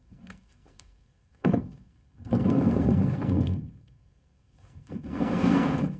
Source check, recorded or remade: remade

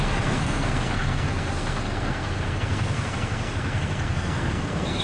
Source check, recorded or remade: remade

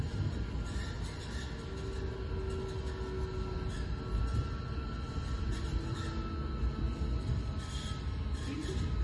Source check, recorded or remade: recorded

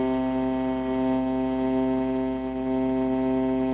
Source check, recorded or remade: recorded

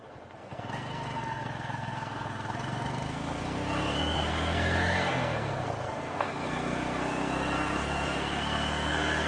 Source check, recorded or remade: remade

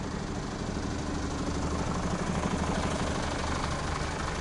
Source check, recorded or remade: recorded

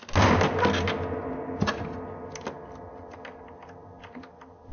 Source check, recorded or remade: recorded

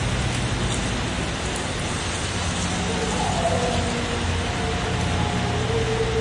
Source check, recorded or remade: recorded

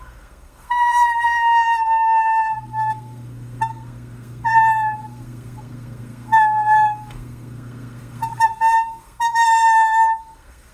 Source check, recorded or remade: remade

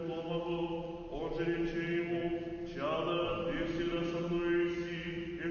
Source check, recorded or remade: recorded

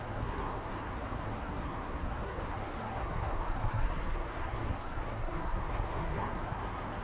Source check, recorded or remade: remade